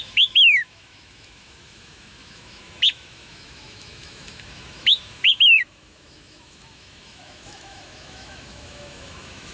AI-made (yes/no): yes